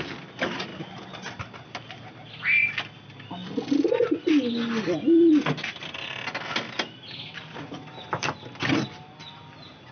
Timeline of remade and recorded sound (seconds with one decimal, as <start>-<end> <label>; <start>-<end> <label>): 0.0-9.9 recorded

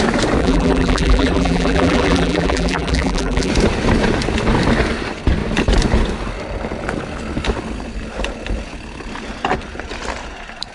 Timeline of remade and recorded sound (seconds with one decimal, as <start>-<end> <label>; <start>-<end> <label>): 0.0-0.4 recorded; 0.4-3.5 remade; 3.5-10.7 recorded

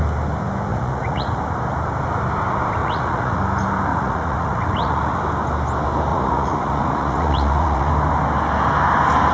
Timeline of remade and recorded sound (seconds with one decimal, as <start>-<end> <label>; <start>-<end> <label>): 0.0-0.7 recorded; 0.7-1.4 remade; 1.4-2.8 recorded; 2.8-3.4 remade; 3.4-3.9 recorded; 3.9-5.2 remade; 5.2-6.1 recorded; 6.1-7.9 remade; 7.9-9.3 recorded

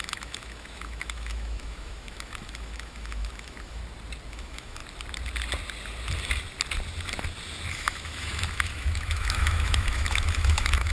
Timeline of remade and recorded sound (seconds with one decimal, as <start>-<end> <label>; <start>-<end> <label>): 0.0-3.8 remade; 3.8-4.3 recorded; 4.3-4.8 remade; 4.8-7.7 recorded; 7.7-10.9 remade

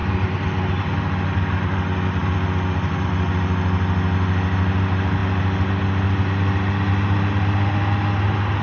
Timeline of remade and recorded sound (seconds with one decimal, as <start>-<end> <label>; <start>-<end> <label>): 0.0-8.6 recorded

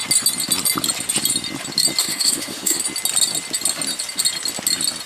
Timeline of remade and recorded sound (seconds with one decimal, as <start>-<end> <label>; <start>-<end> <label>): 0.0-2.0 recorded; 2.0-2.8 remade; 2.8-5.1 recorded

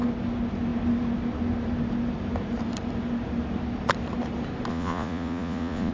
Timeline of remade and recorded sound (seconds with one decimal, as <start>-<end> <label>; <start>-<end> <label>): 0.0-4.7 recorded; 4.7-5.9 remade